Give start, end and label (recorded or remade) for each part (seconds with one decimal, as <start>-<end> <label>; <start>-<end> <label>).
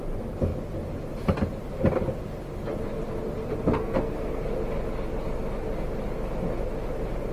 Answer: 0.0-3.8 recorded; 3.8-4.4 remade; 4.4-7.3 recorded